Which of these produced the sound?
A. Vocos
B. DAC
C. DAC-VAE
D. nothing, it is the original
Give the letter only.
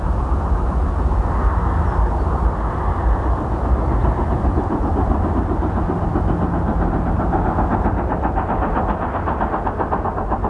D